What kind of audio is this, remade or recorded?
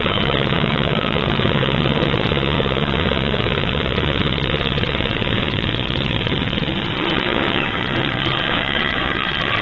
remade